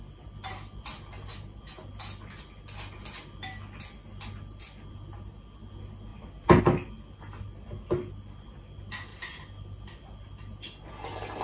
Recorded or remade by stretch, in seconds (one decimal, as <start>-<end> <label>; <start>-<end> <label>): 0.0-6.1 recorded; 6.1-6.6 remade; 6.6-9.1 recorded; 9.1-9.8 remade; 9.8-11.4 recorded